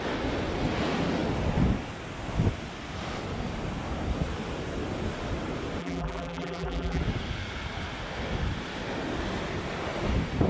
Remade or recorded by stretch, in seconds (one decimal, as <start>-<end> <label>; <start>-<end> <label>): 0.0-5.8 recorded; 5.8-7.0 remade; 7.0-10.5 recorded